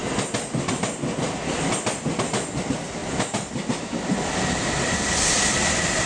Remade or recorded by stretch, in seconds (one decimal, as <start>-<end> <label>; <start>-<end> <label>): 0.0-6.1 recorded